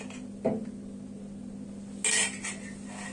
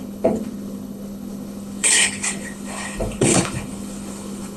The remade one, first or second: second